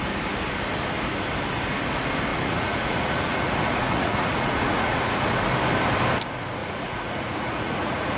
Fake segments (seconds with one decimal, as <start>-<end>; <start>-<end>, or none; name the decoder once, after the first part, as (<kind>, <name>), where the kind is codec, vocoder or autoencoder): 2.3-5.2 (vocoder, Vocos); 6.6-8.2